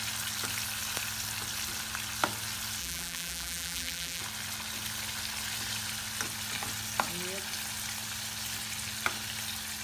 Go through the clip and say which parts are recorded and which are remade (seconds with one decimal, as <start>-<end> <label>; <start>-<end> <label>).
0.0-2.8 recorded; 2.8-4.2 remade; 4.2-9.8 recorded